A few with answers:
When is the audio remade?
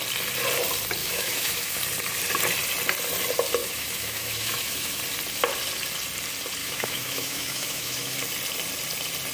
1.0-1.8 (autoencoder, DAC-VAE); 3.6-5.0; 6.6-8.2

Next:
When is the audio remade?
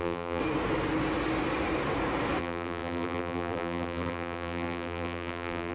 0.0-0.4 (vocoder, BigVGAN v2); 2.4-5.7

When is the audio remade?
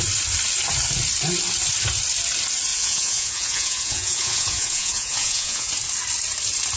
2.7-5.7 (vocoder, Vocos)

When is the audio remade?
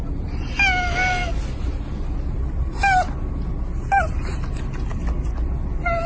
none